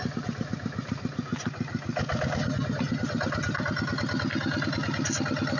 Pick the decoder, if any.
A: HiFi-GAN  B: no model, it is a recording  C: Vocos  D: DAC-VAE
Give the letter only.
B